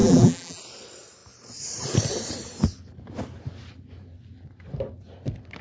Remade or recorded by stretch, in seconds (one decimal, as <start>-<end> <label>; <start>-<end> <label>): 0.0-0.6 remade; 0.6-5.6 recorded